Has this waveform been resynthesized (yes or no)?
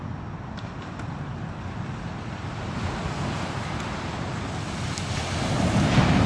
no